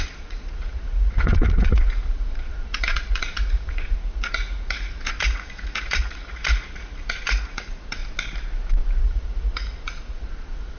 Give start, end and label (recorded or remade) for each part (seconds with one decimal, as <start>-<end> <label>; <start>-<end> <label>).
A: 0.0-8.0 remade; 8.0-9.0 recorded; 9.0-10.8 remade